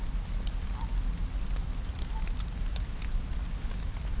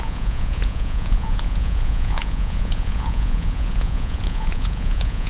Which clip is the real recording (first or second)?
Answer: first